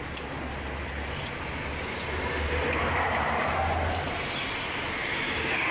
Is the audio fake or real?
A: real